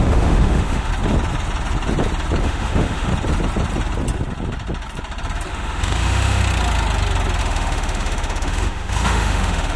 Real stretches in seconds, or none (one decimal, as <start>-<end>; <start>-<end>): 0.9-2.4; 3.1-5.5; 6.4-7.4